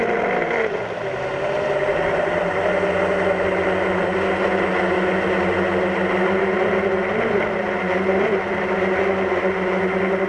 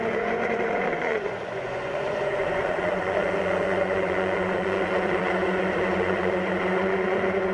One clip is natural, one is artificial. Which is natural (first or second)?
first